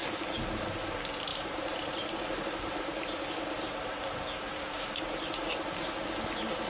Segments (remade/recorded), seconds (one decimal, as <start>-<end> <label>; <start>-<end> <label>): 0.0-1.3 recorded; 1.3-1.9 remade; 1.9-4.5 recorded; 4.5-5.2 remade; 5.2-6.7 recorded